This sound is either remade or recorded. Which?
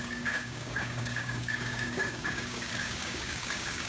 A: remade